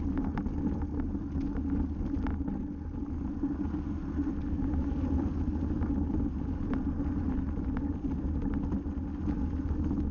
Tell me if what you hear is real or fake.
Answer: real